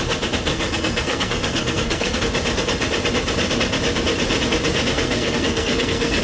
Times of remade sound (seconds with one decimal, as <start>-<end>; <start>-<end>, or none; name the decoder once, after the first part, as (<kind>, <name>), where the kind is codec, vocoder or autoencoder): 0.5-2.2 (codec, SNAC); 4.9-6.2